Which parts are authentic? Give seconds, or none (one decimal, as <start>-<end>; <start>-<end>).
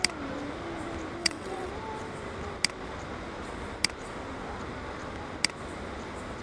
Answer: 0.0-1.2; 1.7-6.4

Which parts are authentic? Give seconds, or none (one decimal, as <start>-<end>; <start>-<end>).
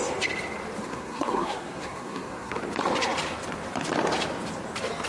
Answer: 0.0-0.8; 2.6-5.1